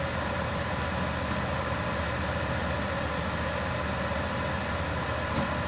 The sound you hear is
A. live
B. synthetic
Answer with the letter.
A